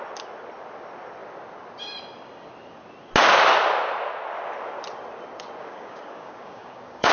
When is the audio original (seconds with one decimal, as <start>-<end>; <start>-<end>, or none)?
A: 0.0-5.6